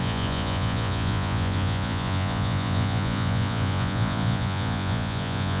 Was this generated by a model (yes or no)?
yes